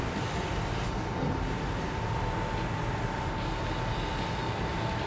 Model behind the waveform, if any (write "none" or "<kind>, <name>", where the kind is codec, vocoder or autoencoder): none